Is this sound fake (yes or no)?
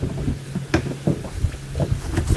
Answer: no